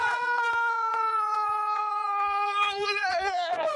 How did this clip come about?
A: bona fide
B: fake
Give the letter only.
B